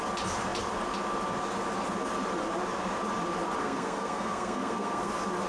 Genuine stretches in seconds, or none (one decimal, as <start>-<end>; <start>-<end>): 0.0-3.6; 5.1-5.5